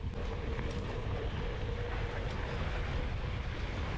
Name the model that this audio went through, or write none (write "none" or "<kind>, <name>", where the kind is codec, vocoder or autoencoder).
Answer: none